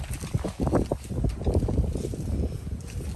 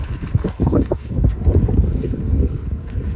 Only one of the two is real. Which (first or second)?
first